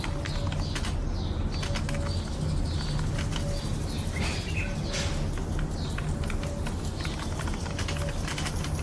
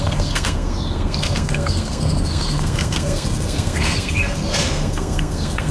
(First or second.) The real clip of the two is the first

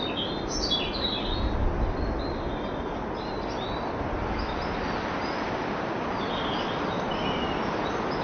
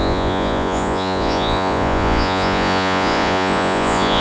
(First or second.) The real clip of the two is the first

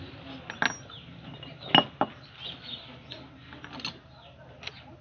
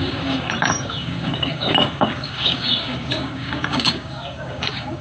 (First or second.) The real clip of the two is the first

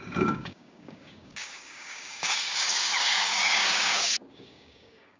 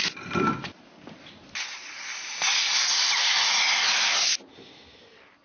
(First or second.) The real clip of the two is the second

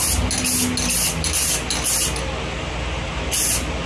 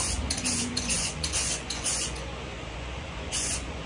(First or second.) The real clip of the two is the first